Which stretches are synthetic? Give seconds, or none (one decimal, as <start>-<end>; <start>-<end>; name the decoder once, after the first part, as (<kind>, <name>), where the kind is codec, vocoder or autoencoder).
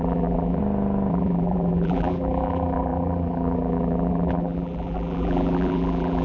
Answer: 0.0-0.6 (vocoder, BigVGAN v2); 1.1-6.2